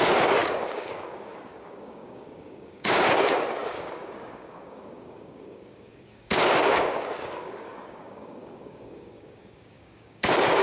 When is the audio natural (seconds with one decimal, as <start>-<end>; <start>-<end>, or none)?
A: none